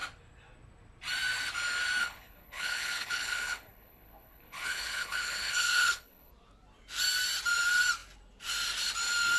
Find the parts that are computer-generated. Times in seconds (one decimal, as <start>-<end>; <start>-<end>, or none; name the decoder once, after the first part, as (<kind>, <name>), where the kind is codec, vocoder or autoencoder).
2.0-6.3 (codec, HILCodec)